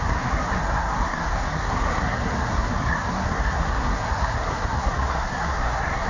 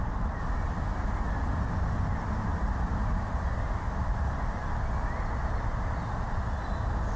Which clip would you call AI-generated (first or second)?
first